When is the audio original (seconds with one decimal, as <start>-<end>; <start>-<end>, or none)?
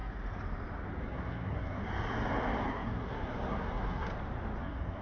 0.0-1.0; 1.8-2.7; 4.1-4.6